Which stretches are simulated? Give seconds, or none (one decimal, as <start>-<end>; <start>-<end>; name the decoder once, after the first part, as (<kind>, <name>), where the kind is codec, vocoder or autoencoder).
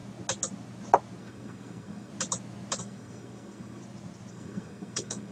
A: 1.2-2.1 (codec, SNAC); 2.8-3.8; 4.3-5.3